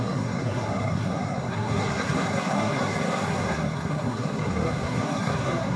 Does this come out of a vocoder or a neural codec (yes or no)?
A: yes